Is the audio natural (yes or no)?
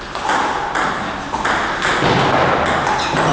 yes